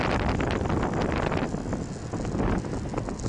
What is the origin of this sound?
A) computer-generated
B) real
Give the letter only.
B